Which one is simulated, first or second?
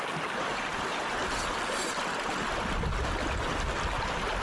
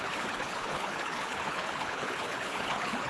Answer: second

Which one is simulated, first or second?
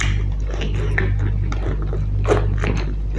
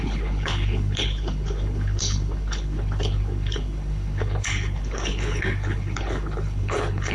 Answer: second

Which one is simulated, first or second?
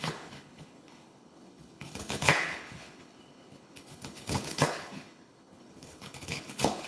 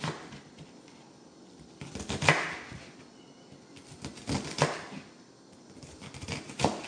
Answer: first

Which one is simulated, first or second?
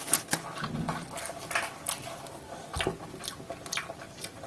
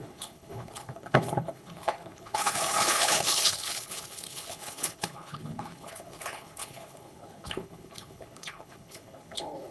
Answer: second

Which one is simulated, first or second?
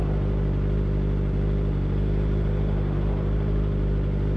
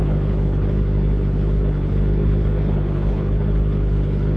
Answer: second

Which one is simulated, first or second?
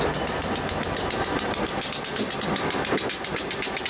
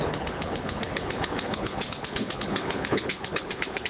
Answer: second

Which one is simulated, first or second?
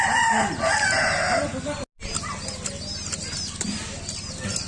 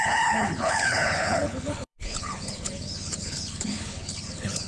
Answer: second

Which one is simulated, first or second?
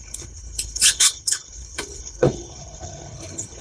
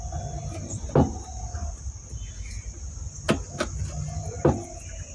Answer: first